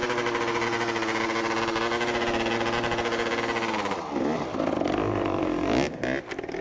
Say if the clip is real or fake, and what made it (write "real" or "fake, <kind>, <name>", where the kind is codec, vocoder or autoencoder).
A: real